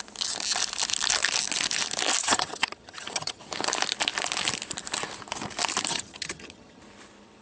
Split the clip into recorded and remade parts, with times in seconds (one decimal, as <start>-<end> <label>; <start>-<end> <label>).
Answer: 0.0-2.2 recorded; 2.2-3.4 remade; 3.4-5.9 recorded; 5.9-6.8 remade; 6.8-7.4 recorded